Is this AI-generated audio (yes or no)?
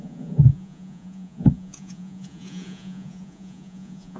yes